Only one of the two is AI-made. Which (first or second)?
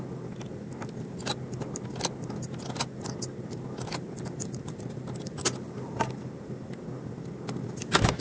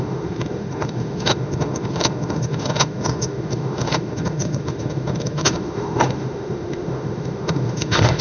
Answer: second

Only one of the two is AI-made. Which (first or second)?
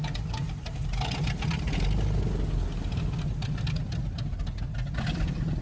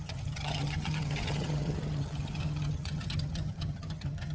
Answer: second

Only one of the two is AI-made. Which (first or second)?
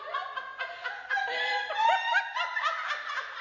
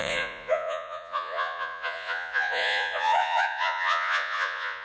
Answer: second